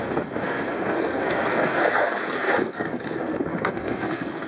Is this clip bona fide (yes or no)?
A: no